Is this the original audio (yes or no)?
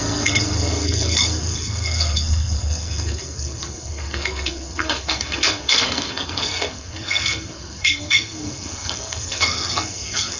no